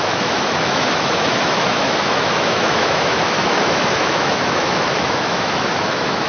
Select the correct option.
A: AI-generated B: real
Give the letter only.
A